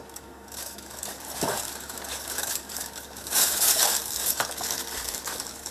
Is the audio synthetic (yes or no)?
yes